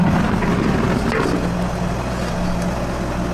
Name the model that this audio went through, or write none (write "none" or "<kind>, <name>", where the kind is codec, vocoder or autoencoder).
none